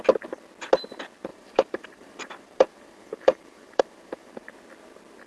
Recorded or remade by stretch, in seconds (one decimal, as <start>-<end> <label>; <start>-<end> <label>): 0.0-1.3 recorded; 1.3-4.5 remade; 4.5-5.3 recorded